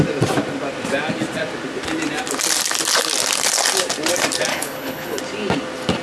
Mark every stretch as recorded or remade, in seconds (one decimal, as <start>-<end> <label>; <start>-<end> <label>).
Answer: 0.0-4.5 recorded; 4.5-5.2 remade; 5.2-6.0 recorded